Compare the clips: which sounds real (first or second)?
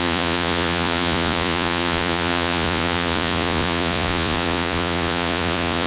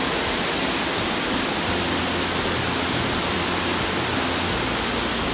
second